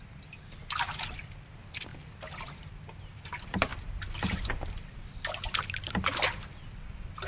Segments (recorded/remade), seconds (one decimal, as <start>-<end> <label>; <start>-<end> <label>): 0.0-7.3 recorded